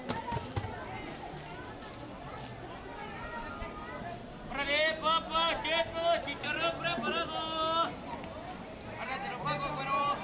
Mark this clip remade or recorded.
recorded